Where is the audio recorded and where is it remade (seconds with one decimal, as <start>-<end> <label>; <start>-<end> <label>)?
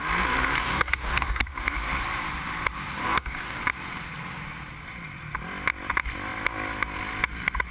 0.0-0.6 recorded; 0.6-1.4 remade; 1.4-3.0 recorded; 3.0-3.6 remade; 3.6-7.7 recorded